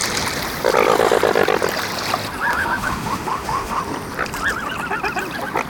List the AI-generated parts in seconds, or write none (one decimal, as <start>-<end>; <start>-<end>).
2.5-3.8